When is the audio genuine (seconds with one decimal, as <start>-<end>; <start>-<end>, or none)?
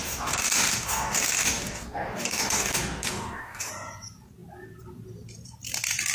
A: 3.7-6.1